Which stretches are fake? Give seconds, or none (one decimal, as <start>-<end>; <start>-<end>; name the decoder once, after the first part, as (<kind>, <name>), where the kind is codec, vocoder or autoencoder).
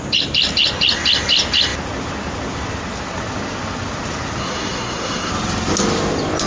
4.4-5.3 (codec, SNAC)